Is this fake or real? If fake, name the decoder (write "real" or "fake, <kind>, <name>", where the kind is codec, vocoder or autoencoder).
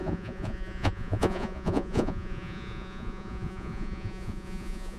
fake, vocoder, Vocos